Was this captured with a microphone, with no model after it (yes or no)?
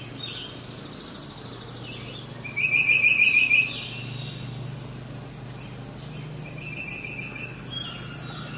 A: yes